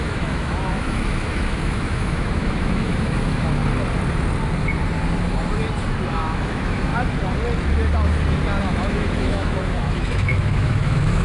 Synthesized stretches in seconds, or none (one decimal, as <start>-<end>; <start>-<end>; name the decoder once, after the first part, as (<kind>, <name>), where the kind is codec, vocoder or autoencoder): 0.0-3.6 (autoencoder, DAC-VAE); 6.1-6.9; 8.6-11.2